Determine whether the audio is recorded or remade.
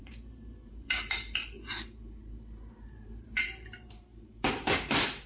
remade